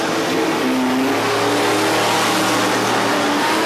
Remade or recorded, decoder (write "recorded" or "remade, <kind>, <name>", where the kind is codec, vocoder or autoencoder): recorded